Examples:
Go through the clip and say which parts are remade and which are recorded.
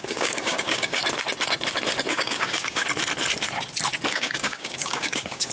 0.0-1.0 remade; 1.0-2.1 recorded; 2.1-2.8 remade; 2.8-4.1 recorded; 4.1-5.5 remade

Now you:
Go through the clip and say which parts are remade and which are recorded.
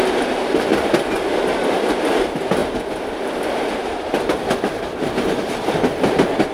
0.0-6.5 recorded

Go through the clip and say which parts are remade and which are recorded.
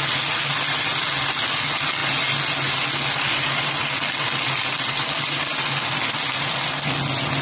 0.0-7.4 recorded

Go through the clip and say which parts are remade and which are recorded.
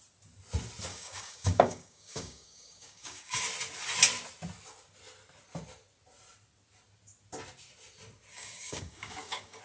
0.0-0.9 recorded; 0.9-3.4 remade; 3.4-8.3 recorded; 8.3-9.6 remade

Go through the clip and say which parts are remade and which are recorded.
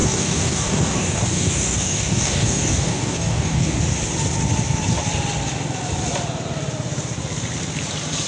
0.0-3.8 remade; 3.8-8.3 recorded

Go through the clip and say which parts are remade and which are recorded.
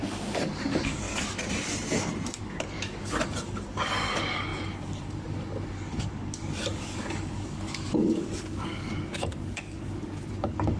0.0-1.1 remade; 1.1-2.4 recorded; 2.4-10.8 remade